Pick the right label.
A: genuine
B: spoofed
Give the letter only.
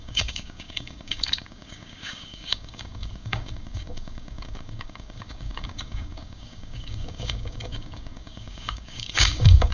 B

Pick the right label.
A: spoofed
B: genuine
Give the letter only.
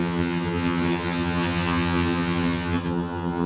A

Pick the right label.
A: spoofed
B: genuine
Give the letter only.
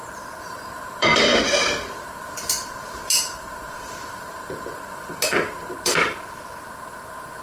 A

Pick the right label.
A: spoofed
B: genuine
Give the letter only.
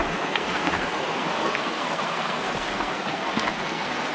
A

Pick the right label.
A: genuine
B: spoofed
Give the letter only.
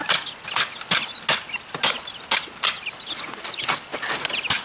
A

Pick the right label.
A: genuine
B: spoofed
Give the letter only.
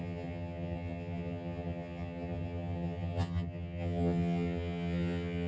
B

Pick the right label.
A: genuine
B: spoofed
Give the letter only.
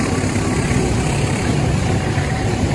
B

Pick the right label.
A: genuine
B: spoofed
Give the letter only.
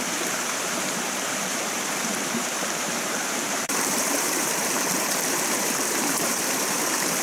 B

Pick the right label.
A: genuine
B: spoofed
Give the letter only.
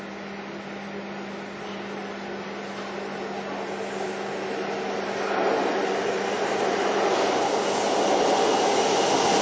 A